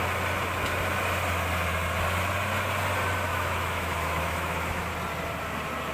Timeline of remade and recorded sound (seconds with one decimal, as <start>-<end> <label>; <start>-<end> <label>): 0.0-3.3 recorded; 3.3-4.8 remade; 4.8-5.9 recorded